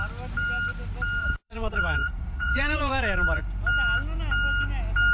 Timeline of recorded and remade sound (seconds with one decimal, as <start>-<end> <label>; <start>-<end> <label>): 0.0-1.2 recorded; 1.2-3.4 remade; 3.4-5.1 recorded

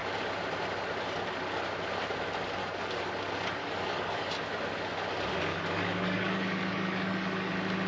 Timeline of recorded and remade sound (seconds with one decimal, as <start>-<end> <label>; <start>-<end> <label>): 0.0-2.6 recorded; 2.6-3.1 remade; 3.1-3.6 recorded; 3.6-4.4 remade; 4.4-5.5 recorded; 5.5-7.5 remade; 7.5-7.9 recorded

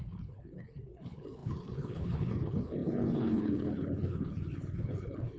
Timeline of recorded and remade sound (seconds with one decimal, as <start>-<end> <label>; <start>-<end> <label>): 0.0-5.4 remade